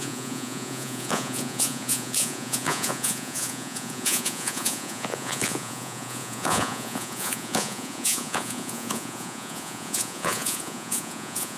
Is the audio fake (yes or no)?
yes